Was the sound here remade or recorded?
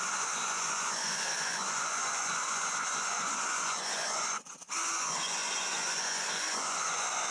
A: remade